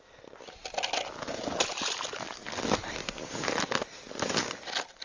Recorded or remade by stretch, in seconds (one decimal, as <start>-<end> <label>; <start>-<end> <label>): 0.0-5.0 recorded